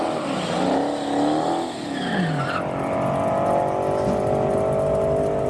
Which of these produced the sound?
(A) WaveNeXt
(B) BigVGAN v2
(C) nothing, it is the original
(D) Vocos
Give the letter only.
C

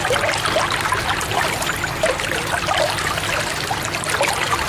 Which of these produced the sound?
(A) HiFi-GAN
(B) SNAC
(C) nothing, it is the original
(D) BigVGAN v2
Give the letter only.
C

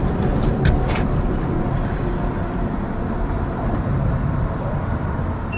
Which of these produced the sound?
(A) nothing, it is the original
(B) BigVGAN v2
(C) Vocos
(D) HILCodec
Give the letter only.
B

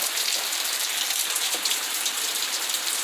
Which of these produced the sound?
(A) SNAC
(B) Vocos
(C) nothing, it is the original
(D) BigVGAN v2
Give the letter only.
D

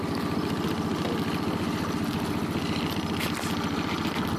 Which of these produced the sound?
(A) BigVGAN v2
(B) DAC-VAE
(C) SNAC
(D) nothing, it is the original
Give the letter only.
D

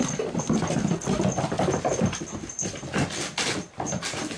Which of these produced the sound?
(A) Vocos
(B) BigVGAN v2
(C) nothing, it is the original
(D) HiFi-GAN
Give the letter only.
B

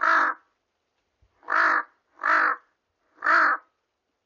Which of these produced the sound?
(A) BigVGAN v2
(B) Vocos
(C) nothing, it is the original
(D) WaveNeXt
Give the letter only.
C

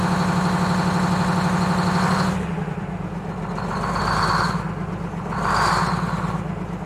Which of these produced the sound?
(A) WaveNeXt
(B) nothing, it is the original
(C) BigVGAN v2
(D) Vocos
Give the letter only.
B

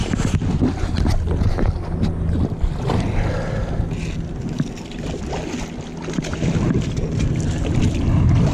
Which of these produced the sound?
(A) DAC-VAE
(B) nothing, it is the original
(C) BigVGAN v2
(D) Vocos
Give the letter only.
B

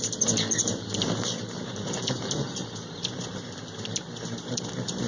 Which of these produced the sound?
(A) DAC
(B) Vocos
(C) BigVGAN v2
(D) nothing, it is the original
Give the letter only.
C